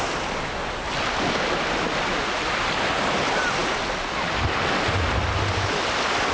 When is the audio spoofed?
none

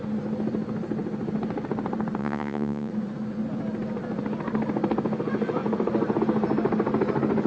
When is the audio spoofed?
2.2-2.9 (vocoder, Vocos)

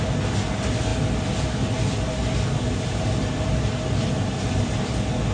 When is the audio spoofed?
none

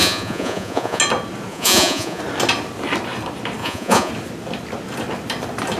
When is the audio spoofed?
0.0-1.0 (vocoder, Vocos); 1.5-2.2; 3.6-4.1

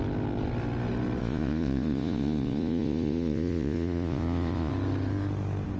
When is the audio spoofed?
1.2-4.7 (vocoder, Vocos)

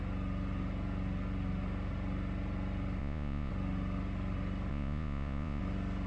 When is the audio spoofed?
3.0-3.5 (vocoder, Vocos); 4.7-5.6

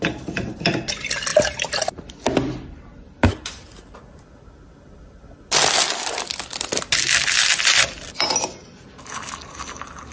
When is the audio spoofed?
none